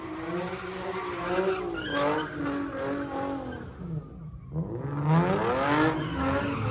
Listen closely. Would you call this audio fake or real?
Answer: real